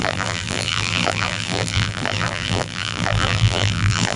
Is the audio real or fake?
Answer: fake